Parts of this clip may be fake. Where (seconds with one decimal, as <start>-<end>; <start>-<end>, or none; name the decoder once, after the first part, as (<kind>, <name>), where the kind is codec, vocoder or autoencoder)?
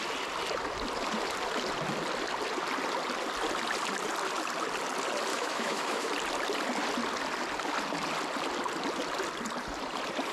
5.3-6.1 (autoencoder, DAC-VAE)